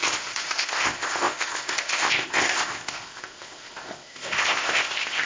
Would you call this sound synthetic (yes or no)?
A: yes